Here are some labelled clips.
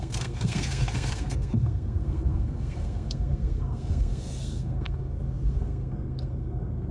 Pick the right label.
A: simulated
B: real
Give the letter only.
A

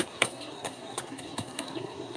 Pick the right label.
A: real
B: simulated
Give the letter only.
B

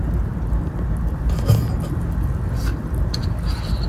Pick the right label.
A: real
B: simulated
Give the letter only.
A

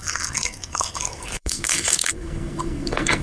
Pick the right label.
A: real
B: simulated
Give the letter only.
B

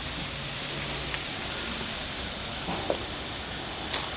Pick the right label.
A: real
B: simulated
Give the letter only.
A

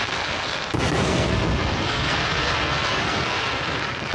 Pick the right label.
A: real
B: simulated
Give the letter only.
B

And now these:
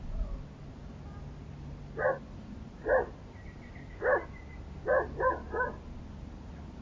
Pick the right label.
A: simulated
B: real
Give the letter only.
B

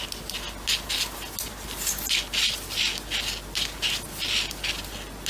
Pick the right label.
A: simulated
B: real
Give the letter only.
B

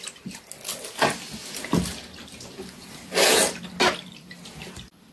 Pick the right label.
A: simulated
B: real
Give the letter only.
B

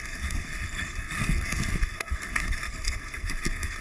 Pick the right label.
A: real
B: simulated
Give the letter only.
B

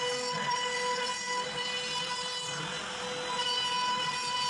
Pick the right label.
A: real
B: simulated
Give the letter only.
A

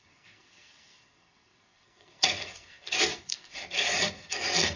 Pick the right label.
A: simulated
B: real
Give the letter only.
A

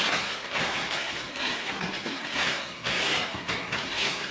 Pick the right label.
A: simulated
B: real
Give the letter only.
A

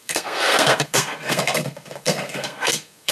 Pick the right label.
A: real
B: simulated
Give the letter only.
B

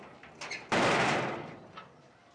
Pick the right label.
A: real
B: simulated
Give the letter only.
A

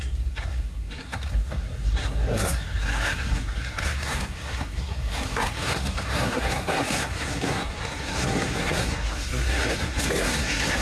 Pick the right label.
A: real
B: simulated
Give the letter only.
B